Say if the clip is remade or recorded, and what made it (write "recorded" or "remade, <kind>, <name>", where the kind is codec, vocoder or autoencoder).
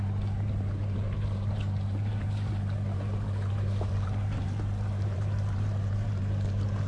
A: remade, vocoder, BigVGAN v2